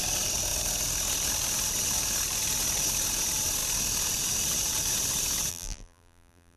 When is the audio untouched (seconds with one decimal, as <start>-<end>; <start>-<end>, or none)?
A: 0.0-5.5

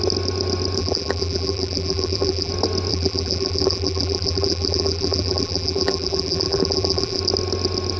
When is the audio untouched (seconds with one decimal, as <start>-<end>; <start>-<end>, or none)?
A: 0.0-0.8; 2.5-2.9; 7.2-8.0

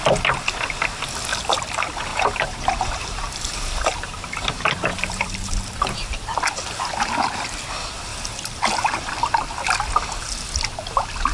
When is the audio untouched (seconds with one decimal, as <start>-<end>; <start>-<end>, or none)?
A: 0.0-2.1; 5.9-8.1; 9.1-11.3

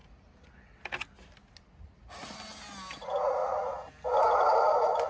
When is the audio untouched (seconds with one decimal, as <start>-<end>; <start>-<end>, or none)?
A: 0.0-3.4

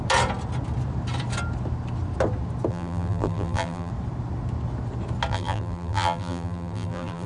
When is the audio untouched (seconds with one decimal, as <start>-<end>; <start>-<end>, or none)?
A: 0.0-2.7; 3.9-5.3

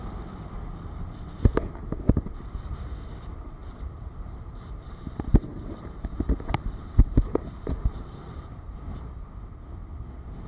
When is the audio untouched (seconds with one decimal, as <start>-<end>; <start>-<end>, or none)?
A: 0.0-3.6; 8.5-10.5